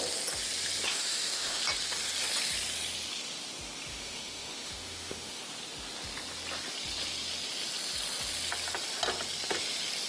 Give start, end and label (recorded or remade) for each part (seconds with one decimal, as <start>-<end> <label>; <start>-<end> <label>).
0.0-0.9 recorded; 0.9-1.6 remade; 1.6-3.9 recorded; 3.9-5.4 remade; 5.4-10.1 recorded